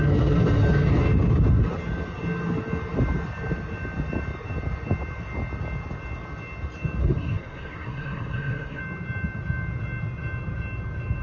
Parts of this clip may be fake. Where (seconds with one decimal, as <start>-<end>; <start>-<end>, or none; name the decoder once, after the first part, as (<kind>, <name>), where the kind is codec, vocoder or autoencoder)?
7.0-8.8 (codec, SNAC)